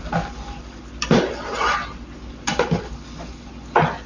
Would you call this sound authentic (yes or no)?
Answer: yes